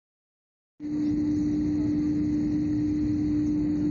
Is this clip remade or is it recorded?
recorded